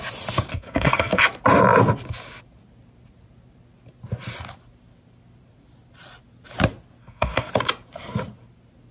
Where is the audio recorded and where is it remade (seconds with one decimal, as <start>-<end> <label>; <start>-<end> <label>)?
0.0-0.5 recorded; 0.5-1.2 remade; 1.2-7.0 recorded; 7.0-7.5 remade; 7.5-8.9 recorded